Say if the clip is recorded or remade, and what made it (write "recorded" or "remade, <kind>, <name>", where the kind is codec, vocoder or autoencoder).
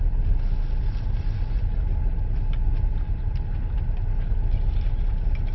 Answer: recorded